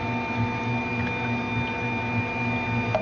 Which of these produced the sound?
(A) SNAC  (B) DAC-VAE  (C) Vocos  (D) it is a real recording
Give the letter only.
D